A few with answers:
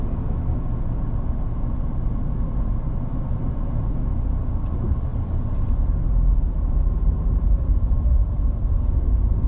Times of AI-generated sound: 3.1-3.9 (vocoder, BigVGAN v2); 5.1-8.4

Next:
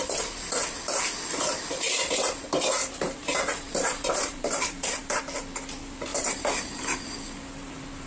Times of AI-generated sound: 2.8-5.2 (vocoder, BigVGAN v2); 6.1-7.0

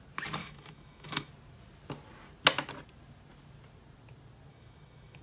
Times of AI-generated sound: 0.4-1.3 (autoencoder, DAC-VAE); 4.5-5.2

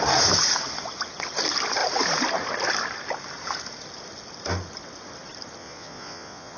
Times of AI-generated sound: 5.6-6.6 (vocoder, Vocos)